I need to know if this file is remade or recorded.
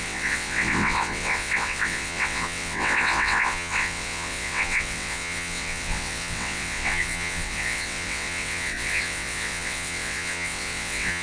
remade